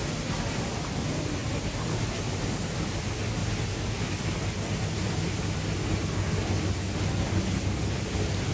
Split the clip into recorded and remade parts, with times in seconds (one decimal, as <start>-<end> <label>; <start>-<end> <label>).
0.0-8.5 recorded